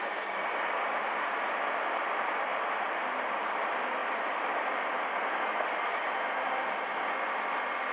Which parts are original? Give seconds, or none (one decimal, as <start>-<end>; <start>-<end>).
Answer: 0.0-7.9